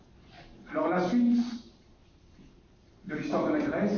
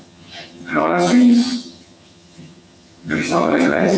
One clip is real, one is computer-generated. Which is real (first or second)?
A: first